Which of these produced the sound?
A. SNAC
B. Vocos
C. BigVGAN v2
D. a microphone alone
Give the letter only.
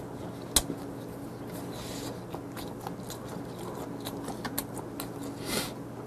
D